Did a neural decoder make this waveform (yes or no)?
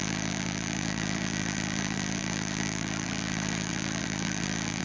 yes